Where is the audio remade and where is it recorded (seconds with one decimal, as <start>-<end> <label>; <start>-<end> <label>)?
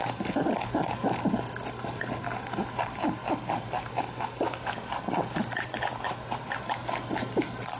0.0-7.8 recorded